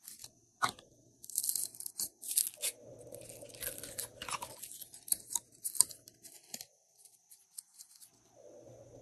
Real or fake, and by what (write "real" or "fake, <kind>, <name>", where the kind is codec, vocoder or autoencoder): real